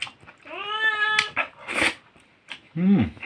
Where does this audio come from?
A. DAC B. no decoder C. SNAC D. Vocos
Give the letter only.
B